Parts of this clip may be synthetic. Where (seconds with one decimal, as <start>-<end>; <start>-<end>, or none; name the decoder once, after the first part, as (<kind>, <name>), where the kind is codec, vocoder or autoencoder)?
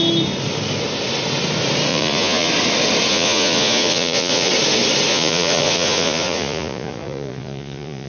1.9-2.5 (vocoder, Vocos); 3.1-4.5; 5.1-8.1